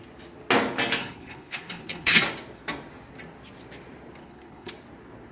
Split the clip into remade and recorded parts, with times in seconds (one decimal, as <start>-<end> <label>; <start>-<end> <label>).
0.0-1.0 recorded; 1.0-2.2 remade; 2.2-4.2 recorded; 4.2-4.7 remade; 4.7-5.3 recorded